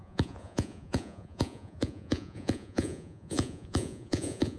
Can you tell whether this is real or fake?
fake